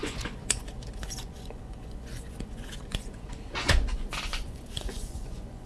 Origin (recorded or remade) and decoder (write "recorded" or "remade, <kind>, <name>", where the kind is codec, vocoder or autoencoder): remade, vocoder, Vocos